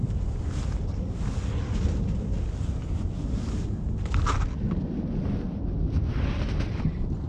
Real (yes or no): yes